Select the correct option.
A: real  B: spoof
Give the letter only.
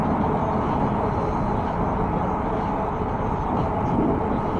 A